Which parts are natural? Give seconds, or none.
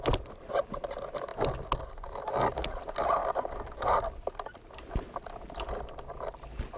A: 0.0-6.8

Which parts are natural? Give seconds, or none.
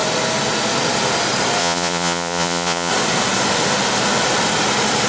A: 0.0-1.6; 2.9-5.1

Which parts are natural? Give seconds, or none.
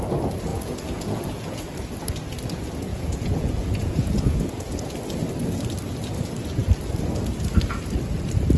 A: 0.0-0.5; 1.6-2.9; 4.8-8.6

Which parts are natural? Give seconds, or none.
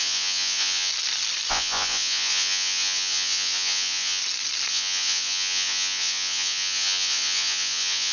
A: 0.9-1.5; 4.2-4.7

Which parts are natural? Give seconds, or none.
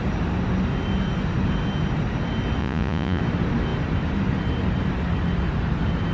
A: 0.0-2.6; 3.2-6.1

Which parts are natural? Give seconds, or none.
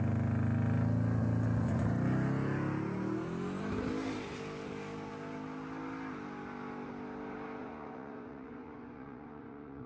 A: 0.0-7.6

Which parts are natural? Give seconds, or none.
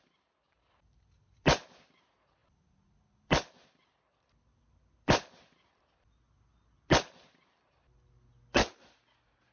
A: 0.0-9.5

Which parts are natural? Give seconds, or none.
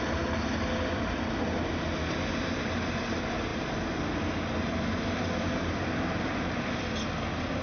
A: 0.0-7.6